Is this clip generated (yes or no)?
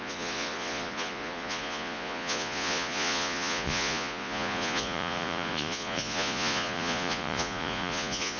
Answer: yes